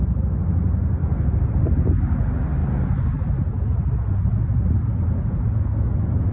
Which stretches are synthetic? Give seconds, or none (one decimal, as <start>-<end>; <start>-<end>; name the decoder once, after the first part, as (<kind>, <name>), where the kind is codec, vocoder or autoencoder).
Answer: none